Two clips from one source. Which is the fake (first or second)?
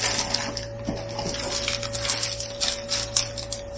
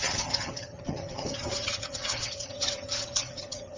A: second